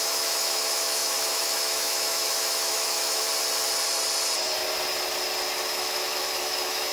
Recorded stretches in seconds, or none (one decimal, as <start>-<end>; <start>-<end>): 3.3-5.7